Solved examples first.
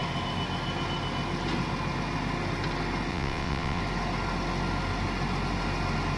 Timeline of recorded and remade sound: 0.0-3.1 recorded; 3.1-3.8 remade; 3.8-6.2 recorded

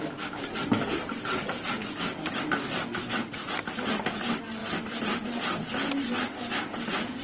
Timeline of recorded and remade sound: 0.0-7.2 recorded